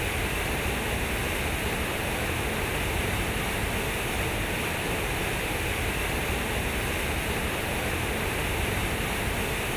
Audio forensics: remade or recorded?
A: recorded